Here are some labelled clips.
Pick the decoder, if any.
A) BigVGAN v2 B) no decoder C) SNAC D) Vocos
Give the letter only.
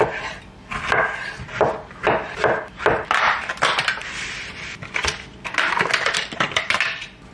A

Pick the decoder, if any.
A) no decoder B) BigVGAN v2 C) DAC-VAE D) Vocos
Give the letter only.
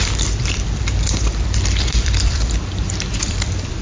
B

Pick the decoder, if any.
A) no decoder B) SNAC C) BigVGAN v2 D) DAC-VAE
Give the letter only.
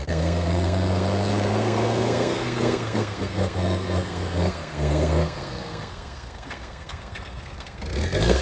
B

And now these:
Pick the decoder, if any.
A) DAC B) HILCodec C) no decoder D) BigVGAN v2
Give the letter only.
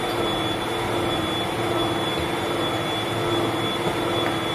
C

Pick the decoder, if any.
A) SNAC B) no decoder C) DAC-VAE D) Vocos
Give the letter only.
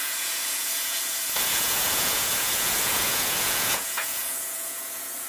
D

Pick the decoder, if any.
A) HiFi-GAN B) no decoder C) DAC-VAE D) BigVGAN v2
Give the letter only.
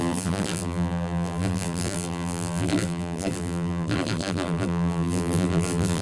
D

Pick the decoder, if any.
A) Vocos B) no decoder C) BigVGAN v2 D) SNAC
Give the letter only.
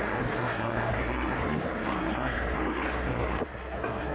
D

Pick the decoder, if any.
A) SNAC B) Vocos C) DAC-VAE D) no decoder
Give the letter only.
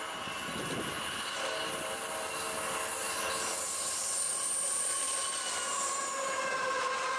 D